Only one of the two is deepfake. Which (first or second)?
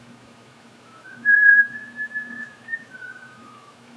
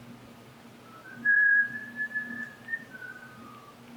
first